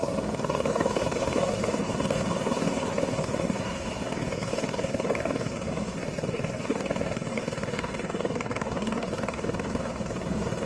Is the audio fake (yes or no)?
yes